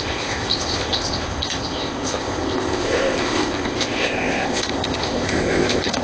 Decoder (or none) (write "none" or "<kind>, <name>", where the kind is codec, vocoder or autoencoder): codec, ZipCodec